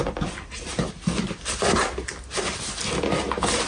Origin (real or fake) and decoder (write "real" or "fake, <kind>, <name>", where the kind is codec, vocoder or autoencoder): real